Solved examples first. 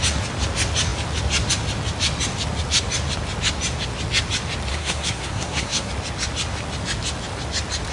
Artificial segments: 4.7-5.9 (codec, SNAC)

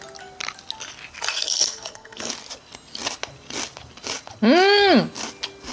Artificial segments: 1.3-2.3 (codec, SNAC)

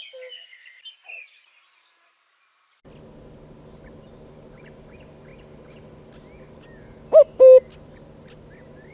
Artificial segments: none

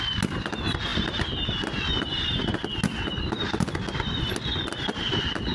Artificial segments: none

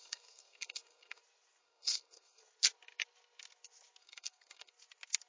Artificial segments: 0.0-1.2 (codec, SNAC); 1.6-2.4; 4.0-4.7

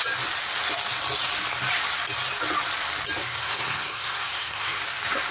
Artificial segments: 3.2-4.8 (codec, SNAC)